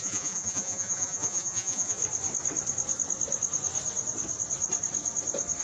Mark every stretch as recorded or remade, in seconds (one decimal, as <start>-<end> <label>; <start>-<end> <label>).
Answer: 0.0-2.0 remade; 2.0-5.6 recorded